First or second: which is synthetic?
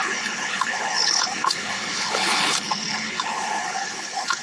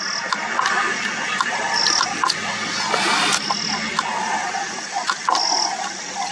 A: first